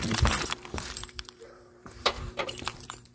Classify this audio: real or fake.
fake